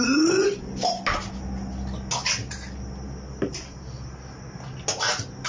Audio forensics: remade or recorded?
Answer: recorded